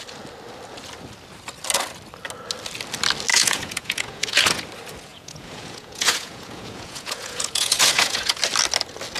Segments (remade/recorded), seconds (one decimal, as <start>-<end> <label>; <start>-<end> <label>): 0.0-3.3 recorded; 3.3-4.6 remade; 4.6-5.1 recorded; 5.1-8.4 remade; 8.4-9.2 recorded